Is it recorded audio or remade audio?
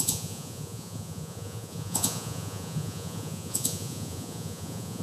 remade